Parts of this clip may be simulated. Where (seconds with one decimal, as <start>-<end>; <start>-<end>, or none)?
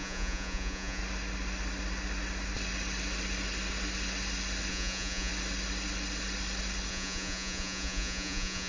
0.0-1.0; 4.7-5.3; 6.9-8.7